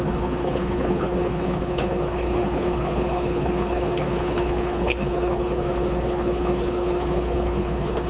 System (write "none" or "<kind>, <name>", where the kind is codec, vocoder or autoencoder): codec, HILCodec